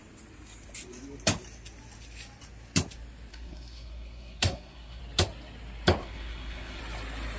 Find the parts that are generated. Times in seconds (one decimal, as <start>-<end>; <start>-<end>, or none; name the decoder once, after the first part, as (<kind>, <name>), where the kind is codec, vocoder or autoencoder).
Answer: 3.3-5.0 (codec, SNAC); 6.0-6.8